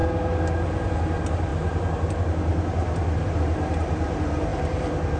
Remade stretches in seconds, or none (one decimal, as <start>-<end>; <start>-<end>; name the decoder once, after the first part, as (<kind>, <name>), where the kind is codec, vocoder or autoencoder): 0.6-5.2 (vocoder, BigVGAN v2)